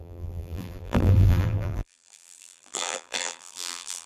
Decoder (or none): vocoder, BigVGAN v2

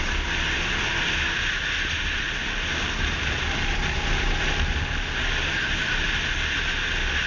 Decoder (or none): none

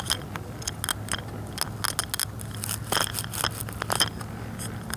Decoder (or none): none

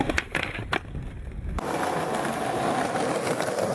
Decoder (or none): none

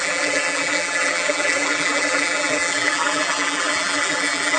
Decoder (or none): vocoder, BigVGAN v2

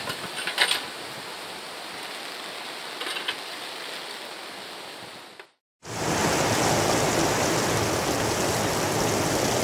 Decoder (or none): none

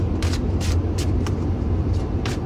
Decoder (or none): vocoder, BigVGAN v2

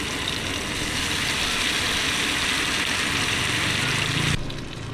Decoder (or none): none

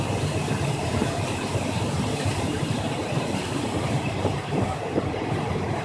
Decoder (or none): vocoder, BigVGAN v2